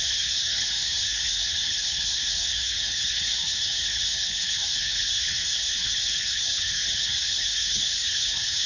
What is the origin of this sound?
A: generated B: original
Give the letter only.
A